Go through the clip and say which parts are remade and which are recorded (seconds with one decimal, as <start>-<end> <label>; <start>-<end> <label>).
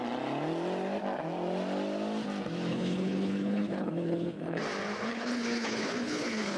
0.0-2.7 recorded; 2.7-4.6 remade; 4.6-5.1 recorded; 5.1-6.6 remade